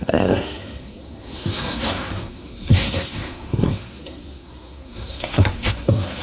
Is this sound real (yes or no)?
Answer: no